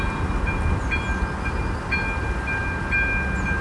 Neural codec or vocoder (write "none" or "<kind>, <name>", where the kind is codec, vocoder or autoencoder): none